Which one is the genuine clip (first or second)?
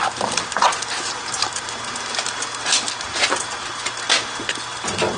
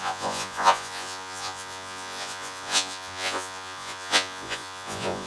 first